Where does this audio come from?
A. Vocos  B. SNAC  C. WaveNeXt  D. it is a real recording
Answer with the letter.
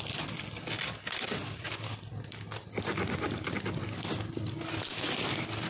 D